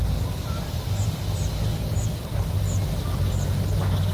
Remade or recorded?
recorded